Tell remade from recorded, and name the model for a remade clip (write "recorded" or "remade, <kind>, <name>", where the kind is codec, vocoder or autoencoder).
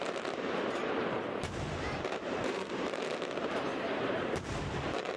remade, vocoder, BigVGAN v2